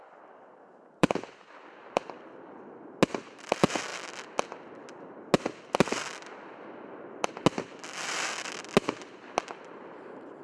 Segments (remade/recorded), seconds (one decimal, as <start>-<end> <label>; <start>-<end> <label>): 0.0-0.7 recorded; 0.7-2.5 remade; 2.5-10.4 recorded

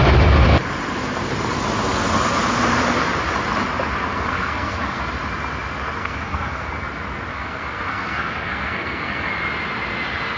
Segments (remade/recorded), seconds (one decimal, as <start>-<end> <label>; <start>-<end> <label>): 0.0-4.1 recorded; 4.1-5.0 remade; 5.0-6.0 recorded; 6.0-6.7 remade; 6.7-7.3 recorded; 7.3-9.3 remade; 9.3-10.4 recorded